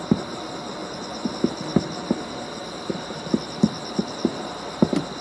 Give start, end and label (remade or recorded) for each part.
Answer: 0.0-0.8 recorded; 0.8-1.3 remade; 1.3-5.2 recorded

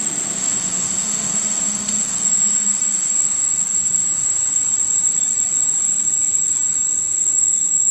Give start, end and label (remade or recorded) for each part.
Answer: 0.0-4.4 remade; 4.4-7.0 recorded; 7.0-7.9 remade

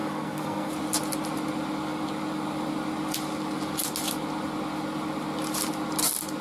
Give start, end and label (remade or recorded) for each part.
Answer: 0.0-0.7 remade; 0.7-6.4 recorded

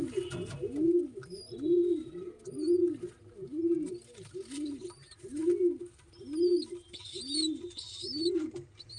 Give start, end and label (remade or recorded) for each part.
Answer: 0.0-9.0 recorded

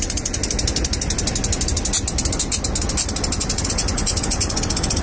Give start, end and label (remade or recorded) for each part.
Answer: 0.0-0.4 remade; 0.4-3.4 recorded; 3.4-5.0 remade

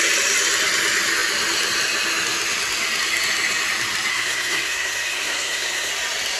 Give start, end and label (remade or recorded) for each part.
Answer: 0.0-4.1 recorded; 4.1-5.9 remade; 5.9-6.4 recorded

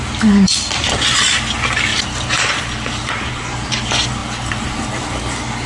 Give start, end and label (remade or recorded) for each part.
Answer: 0.0-1.9 recorded; 1.9-3.1 remade; 3.1-5.7 recorded

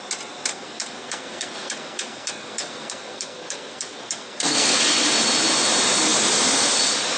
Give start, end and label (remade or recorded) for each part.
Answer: 0.0-0.5 recorded; 0.5-4.8 remade; 4.8-7.2 recorded